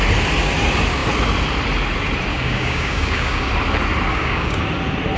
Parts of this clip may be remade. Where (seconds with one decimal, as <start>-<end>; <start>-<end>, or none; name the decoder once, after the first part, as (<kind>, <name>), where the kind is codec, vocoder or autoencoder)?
2.3-3.5 (codec, DAC); 4.1-4.6